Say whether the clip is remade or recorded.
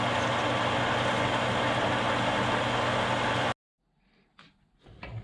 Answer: recorded